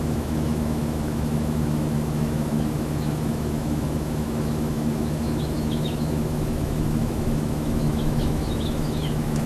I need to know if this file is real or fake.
fake